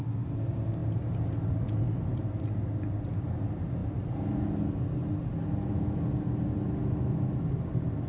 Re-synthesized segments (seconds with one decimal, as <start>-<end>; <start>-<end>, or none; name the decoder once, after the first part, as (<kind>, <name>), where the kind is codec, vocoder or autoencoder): none